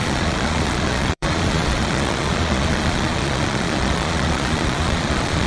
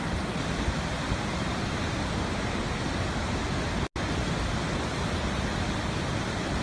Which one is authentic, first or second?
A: second